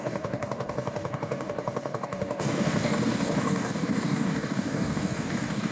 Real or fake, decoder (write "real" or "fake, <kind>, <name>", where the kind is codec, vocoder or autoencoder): fake, codec, DAC